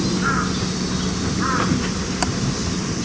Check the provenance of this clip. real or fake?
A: real